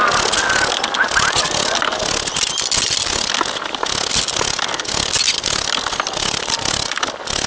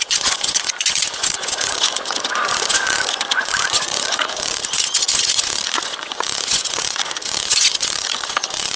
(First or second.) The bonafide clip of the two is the first